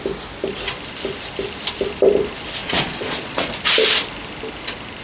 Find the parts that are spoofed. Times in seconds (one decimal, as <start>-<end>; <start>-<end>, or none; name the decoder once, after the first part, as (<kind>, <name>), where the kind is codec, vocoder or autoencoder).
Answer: 2.6-3.5 (vocoder, Vocos)